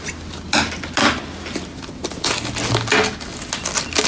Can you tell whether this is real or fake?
real